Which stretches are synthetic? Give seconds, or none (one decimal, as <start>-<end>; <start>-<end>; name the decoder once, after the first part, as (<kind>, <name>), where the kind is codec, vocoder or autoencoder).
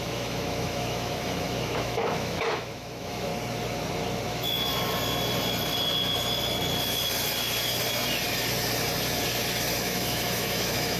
0.0-3.3 (autoencoder, DAC-VAE); 4.3-4.7; 9.8-11.0